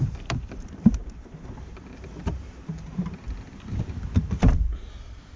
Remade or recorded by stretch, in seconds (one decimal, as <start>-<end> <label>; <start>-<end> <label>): 0.0-1.0 remade; 1.0-4.2 recorded; 4.2-5.4 remade